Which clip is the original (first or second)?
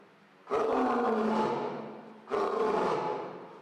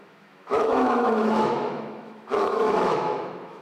first